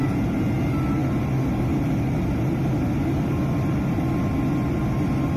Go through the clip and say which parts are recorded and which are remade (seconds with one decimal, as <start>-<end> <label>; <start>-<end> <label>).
0.0-5.4 recorded